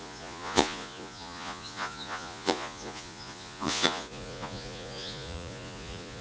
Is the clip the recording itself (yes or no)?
no